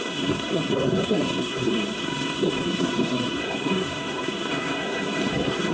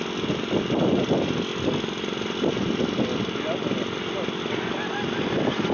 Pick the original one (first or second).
second